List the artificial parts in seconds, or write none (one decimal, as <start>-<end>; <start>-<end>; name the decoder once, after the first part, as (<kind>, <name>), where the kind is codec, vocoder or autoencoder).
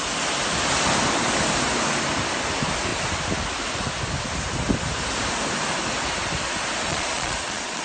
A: 6.9-7.8 (vocoder, Vocos)